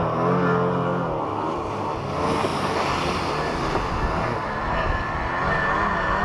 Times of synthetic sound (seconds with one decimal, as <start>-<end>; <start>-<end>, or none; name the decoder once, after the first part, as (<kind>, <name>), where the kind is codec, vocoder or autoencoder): none